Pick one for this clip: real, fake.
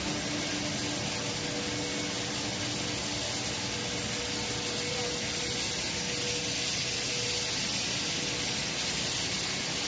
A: real